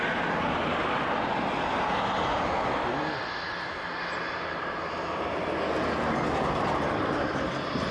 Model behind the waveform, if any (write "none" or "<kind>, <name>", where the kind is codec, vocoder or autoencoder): none